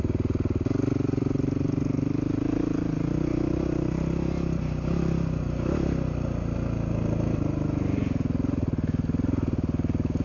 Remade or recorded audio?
recorded